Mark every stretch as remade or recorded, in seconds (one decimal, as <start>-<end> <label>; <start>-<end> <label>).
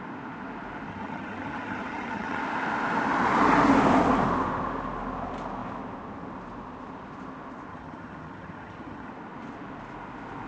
0.0-0.9 recorded; 0.9-2.4 remade; 2.4-7.7 recorded; 7.7-9.1 remade; 9.1-10.5 recorded